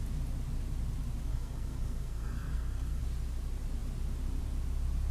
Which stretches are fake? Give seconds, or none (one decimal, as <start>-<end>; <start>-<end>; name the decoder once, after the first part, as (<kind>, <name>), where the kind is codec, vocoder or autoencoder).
1.3-3.0 (codec, SNAC)